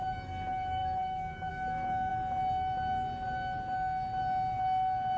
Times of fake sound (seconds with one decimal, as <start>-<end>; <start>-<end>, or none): 0.0-2.1